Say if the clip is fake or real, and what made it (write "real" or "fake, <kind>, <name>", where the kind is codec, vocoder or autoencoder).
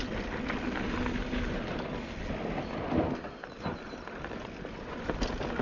real